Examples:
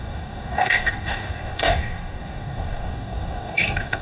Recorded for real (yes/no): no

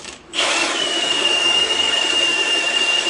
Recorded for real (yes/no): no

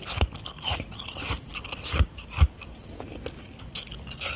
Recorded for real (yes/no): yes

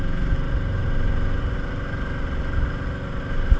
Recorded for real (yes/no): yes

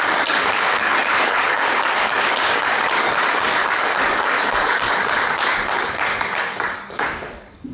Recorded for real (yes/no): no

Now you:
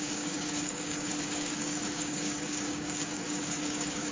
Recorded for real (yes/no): no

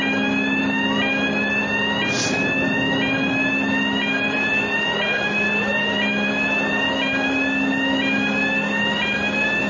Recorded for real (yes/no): yes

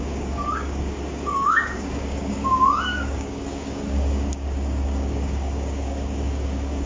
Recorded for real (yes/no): no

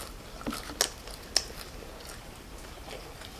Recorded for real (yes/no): yes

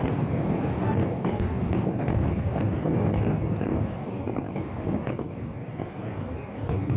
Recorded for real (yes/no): no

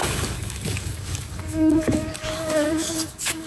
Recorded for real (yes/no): no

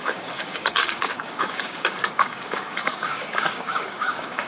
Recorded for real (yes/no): no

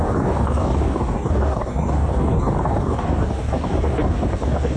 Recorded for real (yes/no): no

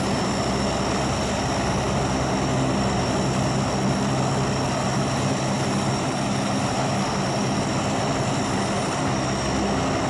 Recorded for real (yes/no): yes